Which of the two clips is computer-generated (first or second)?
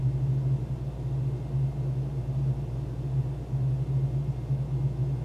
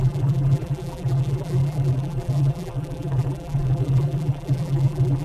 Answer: second